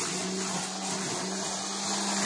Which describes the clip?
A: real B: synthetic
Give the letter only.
A